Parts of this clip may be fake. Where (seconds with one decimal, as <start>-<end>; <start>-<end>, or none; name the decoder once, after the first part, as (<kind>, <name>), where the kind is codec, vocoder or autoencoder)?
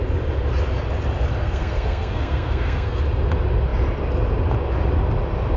1.4-3.0 (codec, SNAC)